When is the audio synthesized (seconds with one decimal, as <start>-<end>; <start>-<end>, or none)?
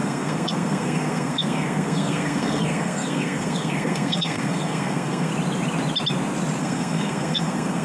0.0-5.3; 6.6-7.8